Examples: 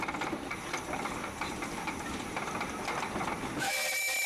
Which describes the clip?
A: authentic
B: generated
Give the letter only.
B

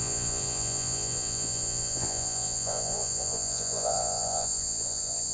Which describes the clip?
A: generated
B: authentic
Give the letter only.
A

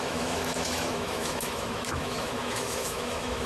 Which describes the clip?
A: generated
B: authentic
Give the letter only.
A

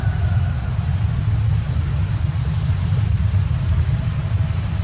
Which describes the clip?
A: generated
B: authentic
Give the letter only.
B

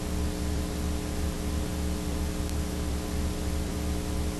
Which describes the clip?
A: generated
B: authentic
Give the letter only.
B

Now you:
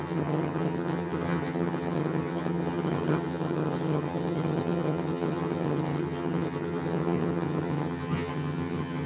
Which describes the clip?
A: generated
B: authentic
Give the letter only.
A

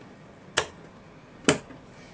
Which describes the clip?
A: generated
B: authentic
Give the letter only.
B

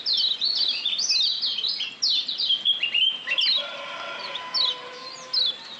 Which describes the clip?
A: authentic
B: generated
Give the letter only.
A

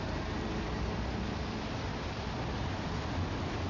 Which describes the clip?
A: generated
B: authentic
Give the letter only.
B